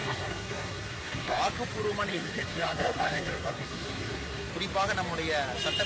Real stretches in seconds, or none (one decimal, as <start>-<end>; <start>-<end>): 1.4-2.1; 4.5-5.9